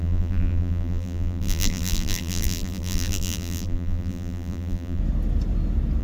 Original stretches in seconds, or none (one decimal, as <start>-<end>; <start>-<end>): 5.0-6.0